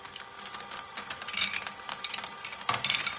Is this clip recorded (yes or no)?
yes